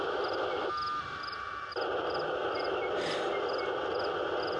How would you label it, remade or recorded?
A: recorded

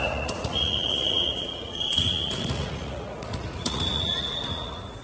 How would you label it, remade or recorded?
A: remade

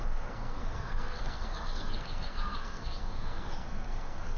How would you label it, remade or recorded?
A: remade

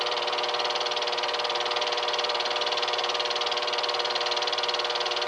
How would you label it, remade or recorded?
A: recorded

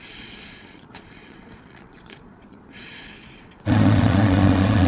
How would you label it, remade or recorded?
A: remade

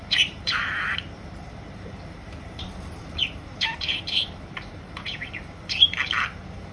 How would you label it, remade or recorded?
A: remade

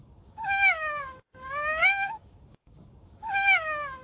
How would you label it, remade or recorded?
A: remade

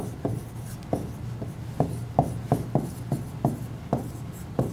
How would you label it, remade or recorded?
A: recorded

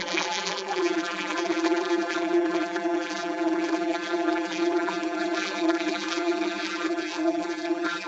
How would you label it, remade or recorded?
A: remade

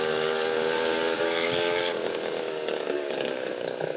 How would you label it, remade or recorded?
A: remade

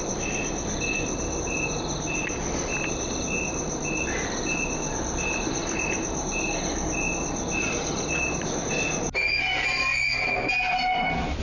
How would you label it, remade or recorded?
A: recorded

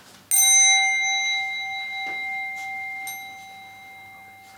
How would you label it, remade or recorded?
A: recorded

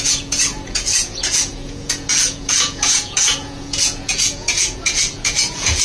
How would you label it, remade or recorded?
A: remade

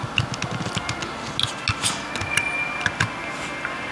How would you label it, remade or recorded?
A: recorded